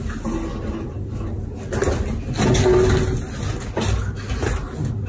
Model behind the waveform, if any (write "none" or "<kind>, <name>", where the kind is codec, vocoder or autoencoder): none